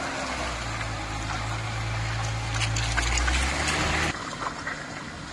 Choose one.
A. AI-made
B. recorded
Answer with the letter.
B